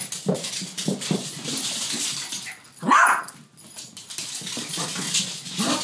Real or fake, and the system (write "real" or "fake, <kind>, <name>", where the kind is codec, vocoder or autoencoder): real